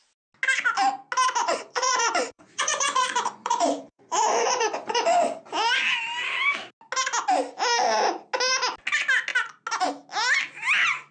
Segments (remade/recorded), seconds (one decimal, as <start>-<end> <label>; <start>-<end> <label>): 0.0-1.4 recorded; 1.4-5.4 remade; 5.4-11.1 recorded